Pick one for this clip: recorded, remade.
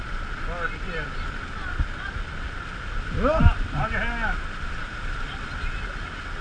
recorded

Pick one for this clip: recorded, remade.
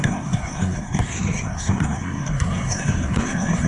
remade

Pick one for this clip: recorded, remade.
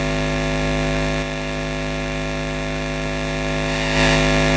recorded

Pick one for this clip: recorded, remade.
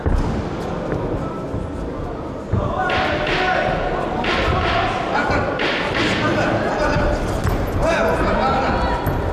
recorded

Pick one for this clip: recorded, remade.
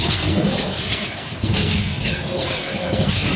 remade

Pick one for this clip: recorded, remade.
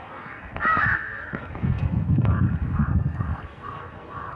remade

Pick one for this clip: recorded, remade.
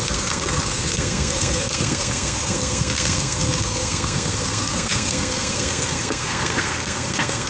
remade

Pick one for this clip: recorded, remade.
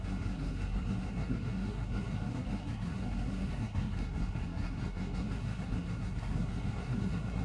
remade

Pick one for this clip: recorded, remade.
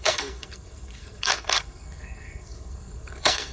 remade